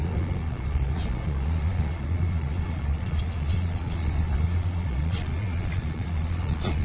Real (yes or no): no